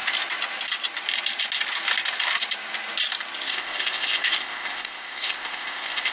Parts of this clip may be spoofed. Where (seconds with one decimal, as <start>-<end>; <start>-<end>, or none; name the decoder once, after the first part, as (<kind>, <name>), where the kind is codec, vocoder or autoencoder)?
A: 3.5-6.1 (codec, ZipCodec)